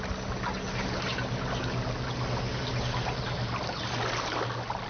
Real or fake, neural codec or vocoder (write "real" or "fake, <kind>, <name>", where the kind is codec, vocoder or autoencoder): real